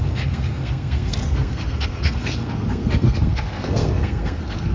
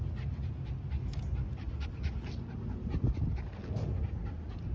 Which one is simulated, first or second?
first